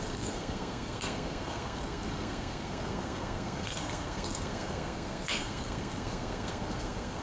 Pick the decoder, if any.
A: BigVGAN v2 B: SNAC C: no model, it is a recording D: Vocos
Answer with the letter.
B